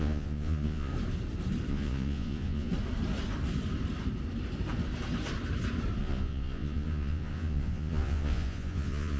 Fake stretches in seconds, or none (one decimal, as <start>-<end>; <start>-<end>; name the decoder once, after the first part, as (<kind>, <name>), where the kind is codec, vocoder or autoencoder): 0.0-0.9 (vocoder, Vocos); 1.7-2.7; 6.0-9.2

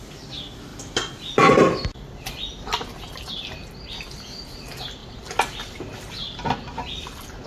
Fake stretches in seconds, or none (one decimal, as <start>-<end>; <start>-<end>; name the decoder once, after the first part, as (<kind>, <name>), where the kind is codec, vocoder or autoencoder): none

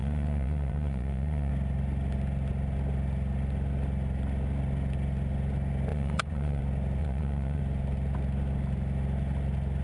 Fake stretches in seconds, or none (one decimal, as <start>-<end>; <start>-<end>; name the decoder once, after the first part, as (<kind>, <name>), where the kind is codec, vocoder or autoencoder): 0.0-1.5 (vocoder, Vocos); 5.9-6.6; 7.0-7.6

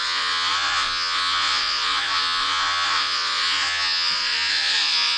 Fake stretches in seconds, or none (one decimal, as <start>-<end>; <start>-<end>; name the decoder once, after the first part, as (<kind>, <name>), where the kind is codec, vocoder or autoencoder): 0.0-5.2 (vocoder, Vocos)

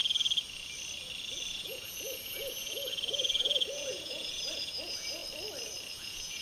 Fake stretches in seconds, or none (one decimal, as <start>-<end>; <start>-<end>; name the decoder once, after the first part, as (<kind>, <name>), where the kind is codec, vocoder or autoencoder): 1.5-5.2 (vocoder, Vocos); 5.9-6.4

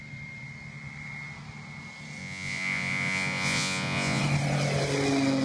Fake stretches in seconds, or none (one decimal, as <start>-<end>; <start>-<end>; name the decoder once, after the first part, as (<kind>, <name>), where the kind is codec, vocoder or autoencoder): 2.2-4.2 (vocoder, Vocos)

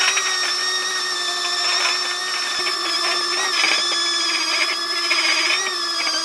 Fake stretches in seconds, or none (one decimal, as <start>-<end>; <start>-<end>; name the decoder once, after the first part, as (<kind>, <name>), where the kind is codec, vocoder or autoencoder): none

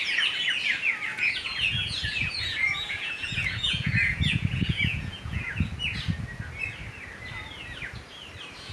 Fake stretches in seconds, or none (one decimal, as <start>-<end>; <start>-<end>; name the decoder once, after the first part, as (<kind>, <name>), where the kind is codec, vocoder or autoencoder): 1.1-5.5 (vocoder, Vocos)